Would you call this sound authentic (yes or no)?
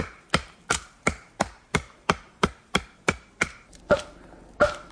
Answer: no